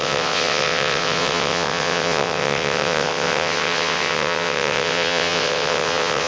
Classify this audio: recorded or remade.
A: remade